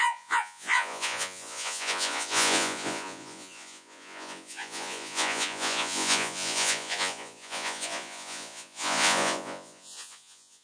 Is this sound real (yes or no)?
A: no